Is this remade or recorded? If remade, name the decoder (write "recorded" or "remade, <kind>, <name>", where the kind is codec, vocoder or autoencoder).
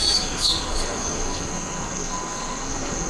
remade, codec, SNAC